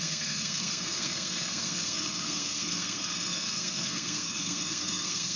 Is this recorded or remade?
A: remade